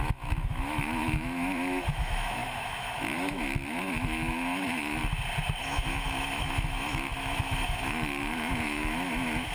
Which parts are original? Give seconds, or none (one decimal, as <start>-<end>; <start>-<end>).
5.0-5.6

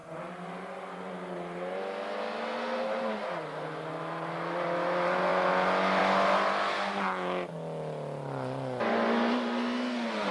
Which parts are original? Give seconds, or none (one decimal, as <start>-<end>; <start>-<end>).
0.0-10.3

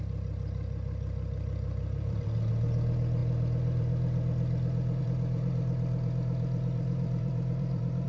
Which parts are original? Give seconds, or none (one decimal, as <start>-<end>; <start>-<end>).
none

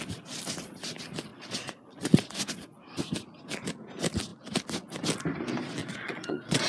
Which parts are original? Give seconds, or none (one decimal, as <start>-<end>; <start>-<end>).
0.0-1.3; 2.3-5.8

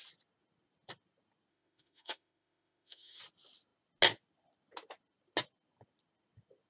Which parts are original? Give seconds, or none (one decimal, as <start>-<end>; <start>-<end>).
0.0-1.5; 3.2-6.7

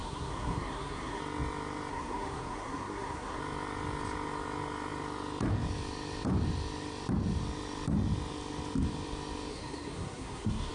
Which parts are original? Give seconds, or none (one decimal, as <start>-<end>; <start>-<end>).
1.2-1.9; 3.4-9.5

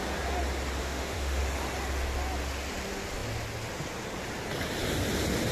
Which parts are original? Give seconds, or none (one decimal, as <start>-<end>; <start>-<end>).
0.0-0.8; 1.4-5.5

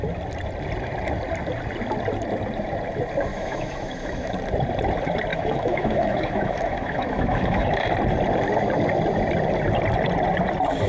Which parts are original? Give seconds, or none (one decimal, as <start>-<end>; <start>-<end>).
0.0-3.3; 4.3-5.3; 7.9-10.9